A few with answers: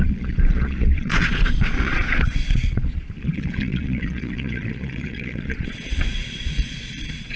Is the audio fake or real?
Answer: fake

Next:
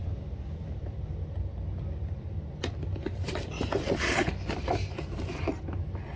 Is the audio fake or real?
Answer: real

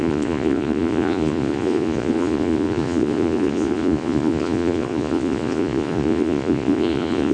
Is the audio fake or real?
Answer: fake